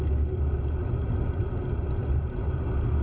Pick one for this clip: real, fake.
real